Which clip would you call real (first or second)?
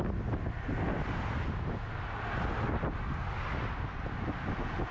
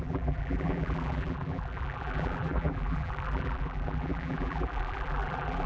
first